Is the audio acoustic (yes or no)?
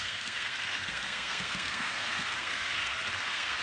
no